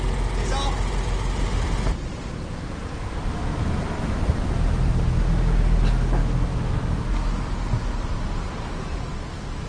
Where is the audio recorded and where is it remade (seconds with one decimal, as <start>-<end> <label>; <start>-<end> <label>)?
0.0-6.2 recorded; 6.2-6.9 remade; 6.9-9.7 recorded